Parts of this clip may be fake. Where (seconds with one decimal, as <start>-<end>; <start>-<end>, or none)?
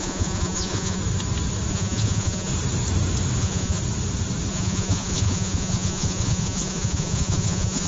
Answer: 0.0-1.0; 1.7-2.5; 3.4-3.8; 4.5-7.9